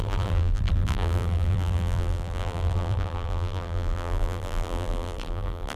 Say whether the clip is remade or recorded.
remade